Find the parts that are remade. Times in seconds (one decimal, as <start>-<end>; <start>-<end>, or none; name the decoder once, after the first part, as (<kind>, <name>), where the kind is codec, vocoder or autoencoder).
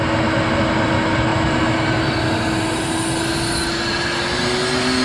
none